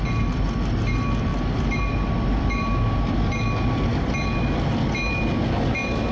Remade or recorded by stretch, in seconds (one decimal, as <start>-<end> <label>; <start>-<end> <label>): 0.0-6.1 recorded